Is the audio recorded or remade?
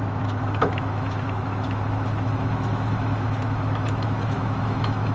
remade